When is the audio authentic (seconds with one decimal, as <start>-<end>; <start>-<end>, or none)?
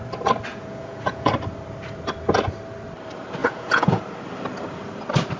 0.0-0.5; 1.3-3.4; 4.0-5.4